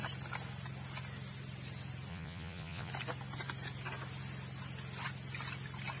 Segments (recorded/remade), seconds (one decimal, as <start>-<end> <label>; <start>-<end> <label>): 0.0-2.1 recorded; 2.1-2.9 remade; 2.9-6.0 recorded